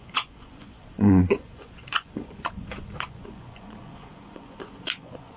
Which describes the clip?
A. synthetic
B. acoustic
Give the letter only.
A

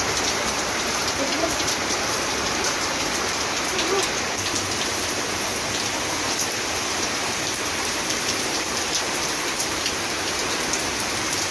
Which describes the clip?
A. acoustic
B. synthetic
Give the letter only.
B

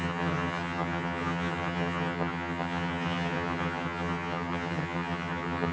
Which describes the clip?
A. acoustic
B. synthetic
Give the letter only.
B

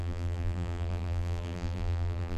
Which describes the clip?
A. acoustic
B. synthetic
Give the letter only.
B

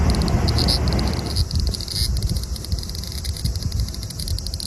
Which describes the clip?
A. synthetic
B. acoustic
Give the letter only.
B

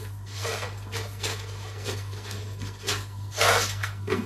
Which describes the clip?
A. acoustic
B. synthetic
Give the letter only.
B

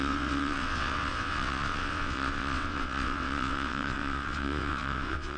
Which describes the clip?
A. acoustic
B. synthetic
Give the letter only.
B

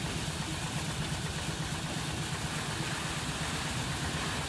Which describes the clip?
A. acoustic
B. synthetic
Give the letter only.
A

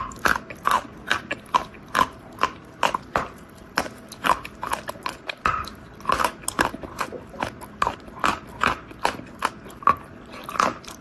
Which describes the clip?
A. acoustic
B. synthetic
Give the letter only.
A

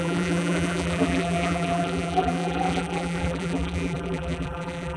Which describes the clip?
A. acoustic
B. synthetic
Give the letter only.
B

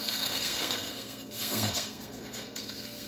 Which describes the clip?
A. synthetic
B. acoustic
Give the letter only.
A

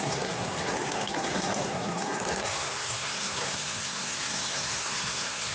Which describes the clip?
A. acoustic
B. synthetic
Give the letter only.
B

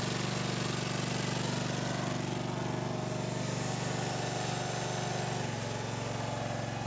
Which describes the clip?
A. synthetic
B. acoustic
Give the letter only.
B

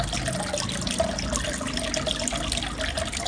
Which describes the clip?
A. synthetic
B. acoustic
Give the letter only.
B